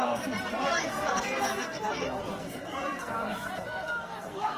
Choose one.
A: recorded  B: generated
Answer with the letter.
B